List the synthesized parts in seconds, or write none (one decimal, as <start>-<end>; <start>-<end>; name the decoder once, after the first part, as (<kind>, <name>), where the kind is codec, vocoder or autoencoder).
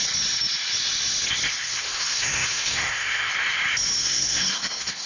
1.6-3.3 (codec, SNAC); 4.0-5.1